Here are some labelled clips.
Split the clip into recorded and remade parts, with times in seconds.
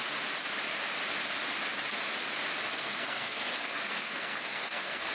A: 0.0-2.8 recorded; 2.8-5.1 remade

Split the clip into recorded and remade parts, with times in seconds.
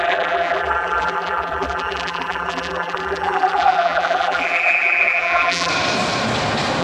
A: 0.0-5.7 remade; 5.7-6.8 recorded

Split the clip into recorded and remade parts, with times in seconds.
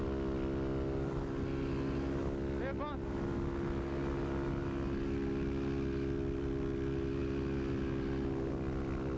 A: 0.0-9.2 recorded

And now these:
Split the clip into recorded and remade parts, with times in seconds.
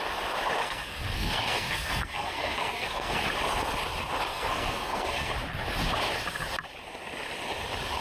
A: 0.0-0.6 recorded; 0.6-3.2 remade; 3.2-4.3 recorded; 4.3-5.3 remade; 5.3-8.0 recorded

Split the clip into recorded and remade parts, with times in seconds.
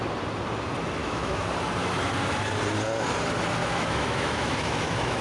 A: 0.0-1.0 recorded; 1.0-1.5 remade; 1.5-3.6 recorded; 3.6-5.2 remade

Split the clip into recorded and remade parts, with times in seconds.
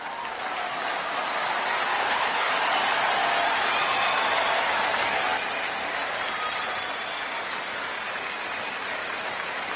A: 0.0-2.0 recorded; 2.0-2.5 remade; 2.5-9.8 recorded